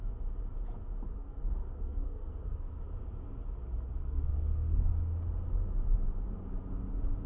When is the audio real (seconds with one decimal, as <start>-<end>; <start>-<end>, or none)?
0.0-1.1; 2.8-4.0; 4.9-7.3